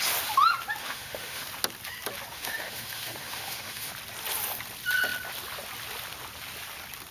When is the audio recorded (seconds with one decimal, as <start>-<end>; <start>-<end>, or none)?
0.0-0.8; 1.4-2.3; 3.9-7.1